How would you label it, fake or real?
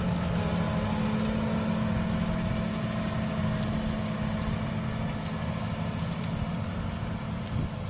real